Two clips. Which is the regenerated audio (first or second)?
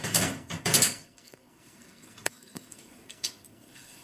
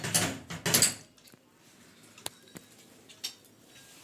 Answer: first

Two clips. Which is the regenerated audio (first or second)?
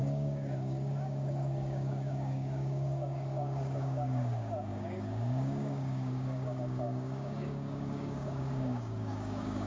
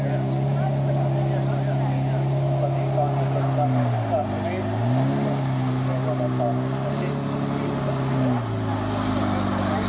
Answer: first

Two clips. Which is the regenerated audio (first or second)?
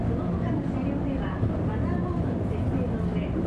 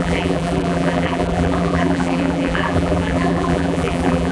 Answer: second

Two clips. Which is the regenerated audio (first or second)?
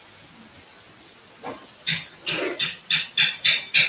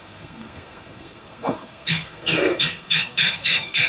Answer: second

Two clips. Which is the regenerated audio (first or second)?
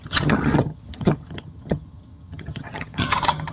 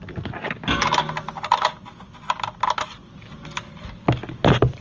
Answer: first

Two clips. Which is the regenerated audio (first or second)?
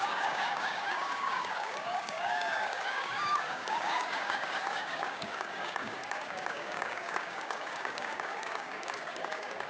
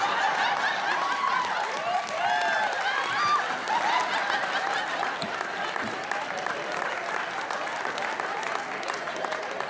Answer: first